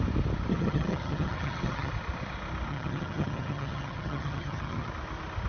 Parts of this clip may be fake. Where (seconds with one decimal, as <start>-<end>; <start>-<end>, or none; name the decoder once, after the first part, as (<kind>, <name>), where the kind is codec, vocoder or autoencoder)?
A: 0.5-1.9 (vocoder, HiFi-GAN); 2.7-4.9

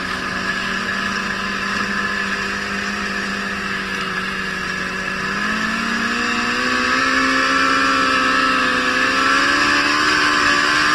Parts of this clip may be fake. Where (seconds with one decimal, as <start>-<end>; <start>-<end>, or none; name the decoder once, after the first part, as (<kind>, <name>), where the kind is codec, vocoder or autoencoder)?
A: none

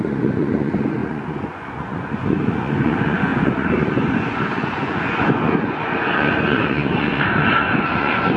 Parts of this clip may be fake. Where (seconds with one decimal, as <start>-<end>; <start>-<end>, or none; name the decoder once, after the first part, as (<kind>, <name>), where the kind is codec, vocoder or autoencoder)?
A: 0.0-8.4 (vocoder, Vocos)

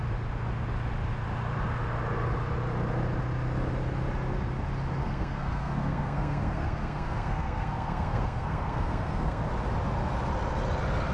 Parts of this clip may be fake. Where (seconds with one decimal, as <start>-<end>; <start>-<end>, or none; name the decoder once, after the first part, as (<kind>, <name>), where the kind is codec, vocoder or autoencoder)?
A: 5.0-9.4 (codec, SNAC)

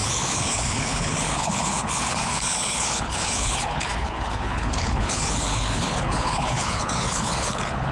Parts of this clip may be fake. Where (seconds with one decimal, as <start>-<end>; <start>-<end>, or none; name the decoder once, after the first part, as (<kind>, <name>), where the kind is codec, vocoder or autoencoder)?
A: 0.0-7.9 (codec, HILCodec)

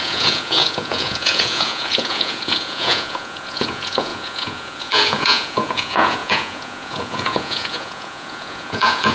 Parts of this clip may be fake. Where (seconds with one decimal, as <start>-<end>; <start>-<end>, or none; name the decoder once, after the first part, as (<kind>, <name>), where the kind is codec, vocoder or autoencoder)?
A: 0.0-9.1 (vocoder, Vocos)

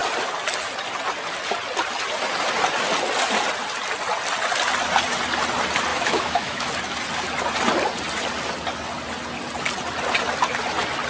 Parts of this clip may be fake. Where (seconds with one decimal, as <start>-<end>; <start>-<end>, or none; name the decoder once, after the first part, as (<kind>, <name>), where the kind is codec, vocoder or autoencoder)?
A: 5.9-6.7 (autoencoder, DAC-VAE)